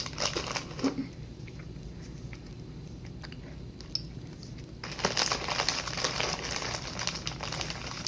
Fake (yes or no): no